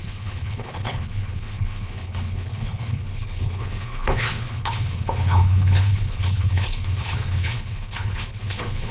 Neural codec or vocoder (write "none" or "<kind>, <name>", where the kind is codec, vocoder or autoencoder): codec, HILCodec